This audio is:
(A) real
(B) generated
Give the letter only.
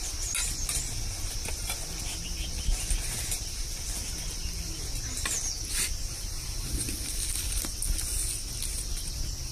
A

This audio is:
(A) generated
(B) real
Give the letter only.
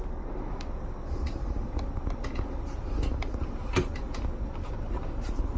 B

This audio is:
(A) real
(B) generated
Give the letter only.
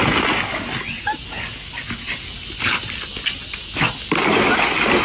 A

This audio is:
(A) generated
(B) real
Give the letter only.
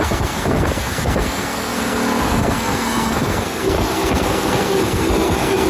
A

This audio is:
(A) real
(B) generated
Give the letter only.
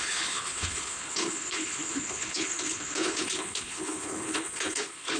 B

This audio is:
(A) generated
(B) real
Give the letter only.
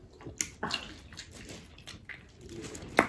B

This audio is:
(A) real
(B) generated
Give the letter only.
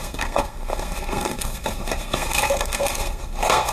B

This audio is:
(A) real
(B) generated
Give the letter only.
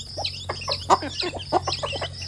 A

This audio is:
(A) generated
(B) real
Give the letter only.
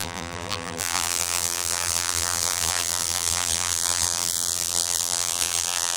A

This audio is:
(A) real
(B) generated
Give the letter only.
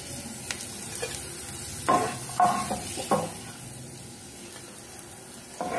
A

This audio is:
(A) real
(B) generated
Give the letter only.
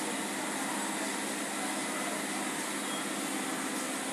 A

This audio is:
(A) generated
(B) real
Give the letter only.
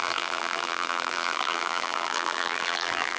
A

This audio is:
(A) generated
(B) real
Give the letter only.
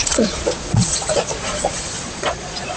A